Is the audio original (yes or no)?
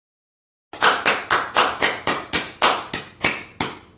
yes